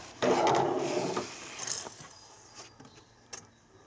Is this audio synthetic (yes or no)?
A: no